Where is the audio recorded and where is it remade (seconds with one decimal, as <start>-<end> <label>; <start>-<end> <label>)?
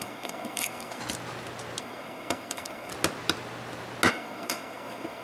0.0-1.0 remade; 1.0-1.8 recorded; 1.8-2.9 remade; 2.9-4.1 recorded; 4.1-5.2 remade